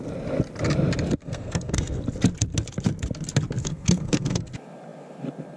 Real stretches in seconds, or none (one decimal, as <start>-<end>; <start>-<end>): 0.0-1.2; 2.0-3.6; 4.5-5.6